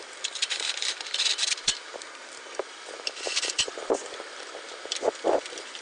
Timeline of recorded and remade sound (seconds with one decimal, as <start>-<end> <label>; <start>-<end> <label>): 0.0-5.8 remade